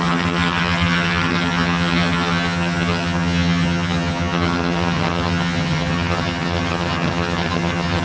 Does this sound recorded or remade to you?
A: remade